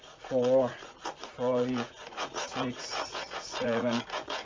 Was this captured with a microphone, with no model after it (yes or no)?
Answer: no